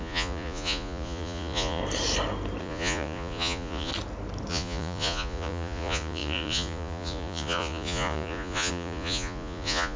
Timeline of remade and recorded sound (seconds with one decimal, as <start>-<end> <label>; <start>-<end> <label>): 0.0-1.8 remade; 1.8-2.6 recorded; 2.6-3.9 remade; 3.9-4.5 recorded; 4.5-10.0 remade